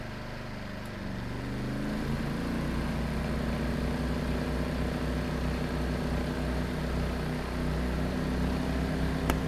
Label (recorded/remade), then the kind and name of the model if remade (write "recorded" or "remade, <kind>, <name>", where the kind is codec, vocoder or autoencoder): recorded